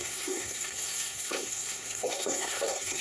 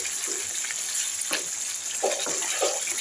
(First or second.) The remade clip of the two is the first